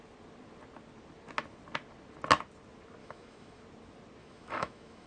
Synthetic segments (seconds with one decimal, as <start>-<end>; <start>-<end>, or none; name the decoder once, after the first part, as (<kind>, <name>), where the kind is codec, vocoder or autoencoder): 3.0-3.6 (autoencoder, DAC-VAE); 4.2-5.1